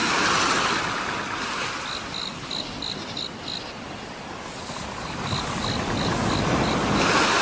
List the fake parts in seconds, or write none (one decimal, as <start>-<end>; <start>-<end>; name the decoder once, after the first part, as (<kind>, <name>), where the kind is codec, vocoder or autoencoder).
none